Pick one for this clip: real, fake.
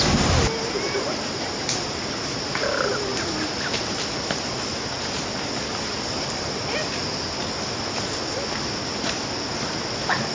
real